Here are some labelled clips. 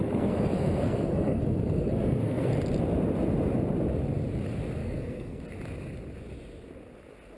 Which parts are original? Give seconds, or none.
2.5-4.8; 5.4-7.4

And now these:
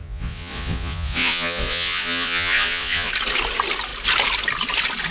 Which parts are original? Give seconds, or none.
3.1-5.1

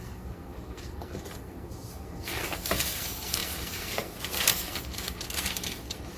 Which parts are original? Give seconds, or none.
none

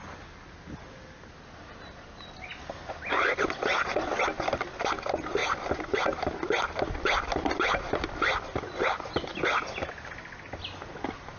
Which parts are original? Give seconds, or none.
0.0-11.4

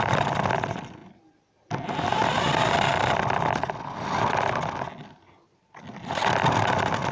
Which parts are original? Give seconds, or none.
0.0-7.1

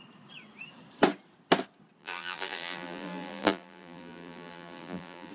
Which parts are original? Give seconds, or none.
0.0-2.0